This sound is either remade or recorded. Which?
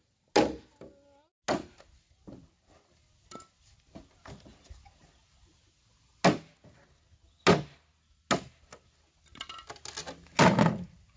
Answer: recorded